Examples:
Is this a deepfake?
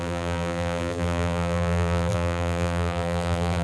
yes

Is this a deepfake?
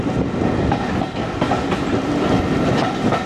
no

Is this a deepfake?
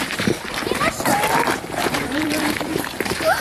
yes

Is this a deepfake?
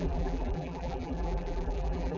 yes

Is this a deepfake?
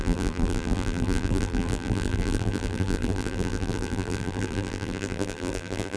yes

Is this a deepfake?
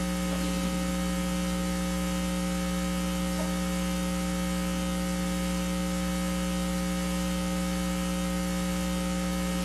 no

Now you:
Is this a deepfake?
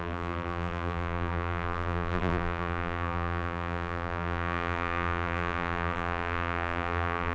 yes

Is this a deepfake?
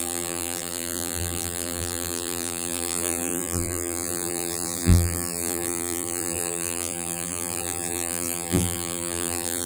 yes